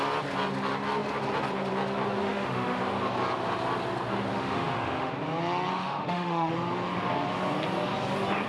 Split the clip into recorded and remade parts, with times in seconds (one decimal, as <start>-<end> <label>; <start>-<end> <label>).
0.0-2.2 recorded; 2.2-2.8 remade; 2.8-4.3 recorded; 4.3-5.1 remade; 5.1-5.7 recorded; 5.7-6.5 remade; 6.5-8.5 recorded